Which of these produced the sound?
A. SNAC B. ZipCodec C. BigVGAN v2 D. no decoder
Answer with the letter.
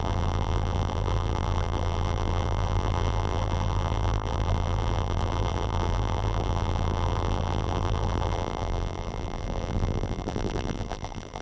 C